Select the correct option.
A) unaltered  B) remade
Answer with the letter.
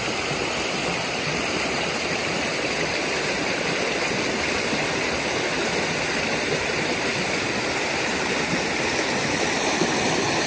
B